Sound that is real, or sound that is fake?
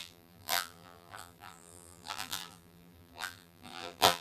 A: fake